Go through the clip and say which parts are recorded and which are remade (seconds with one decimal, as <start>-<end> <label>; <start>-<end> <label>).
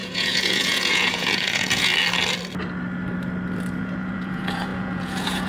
0.0-1.9 remade; 1.9-3.8 recorded; 3.8-5.5 remade